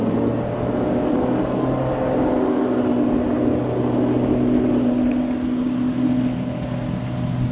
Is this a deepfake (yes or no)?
no